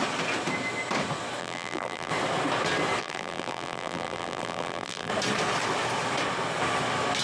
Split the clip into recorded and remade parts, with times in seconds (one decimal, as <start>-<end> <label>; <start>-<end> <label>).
0.0-1.4 recorded; 1.4-2.1 remade; 2.1-3.0 recorded; 3.0-5.1 remade; 5.1-7.2 recorded